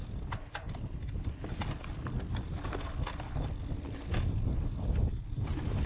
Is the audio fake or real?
real